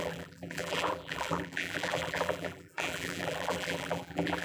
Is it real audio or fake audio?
fake